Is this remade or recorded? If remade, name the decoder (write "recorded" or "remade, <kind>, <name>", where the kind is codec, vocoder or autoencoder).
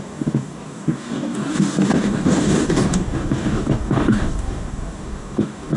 remade, codec, DAC